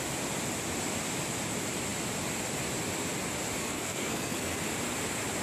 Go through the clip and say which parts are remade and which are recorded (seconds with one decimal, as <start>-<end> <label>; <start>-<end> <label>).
0.0-3.6 recorded; 3.6-4.6 remade; 4.6-5.4 recorded

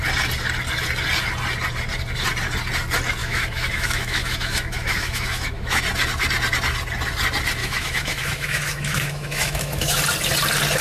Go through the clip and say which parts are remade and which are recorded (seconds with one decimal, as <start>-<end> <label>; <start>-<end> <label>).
0.0-3.2 recorded; 3.2-5.8 remade; 5.8-7.6 recorded; 7.6-10.0 remade; 10.0-10.8 recorded